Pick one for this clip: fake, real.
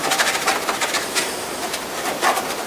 fake